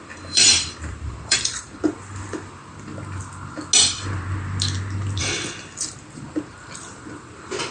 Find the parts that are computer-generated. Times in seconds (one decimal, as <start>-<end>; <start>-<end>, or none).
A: 0.0-2.9; 5.2-7.7